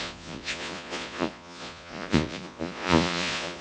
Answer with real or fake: fake